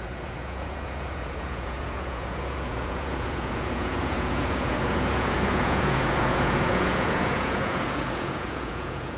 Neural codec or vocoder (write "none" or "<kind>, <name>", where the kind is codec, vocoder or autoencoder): vocoder, Vocos